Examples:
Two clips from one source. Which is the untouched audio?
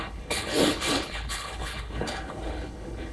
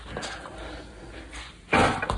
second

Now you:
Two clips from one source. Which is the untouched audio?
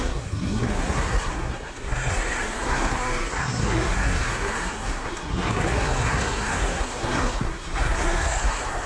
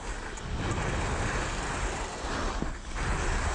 second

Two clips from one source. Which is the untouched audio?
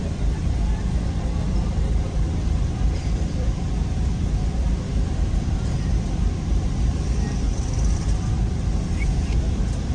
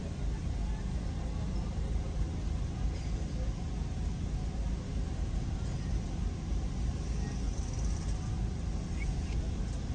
second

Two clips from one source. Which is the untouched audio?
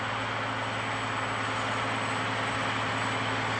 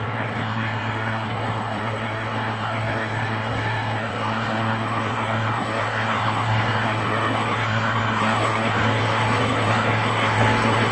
first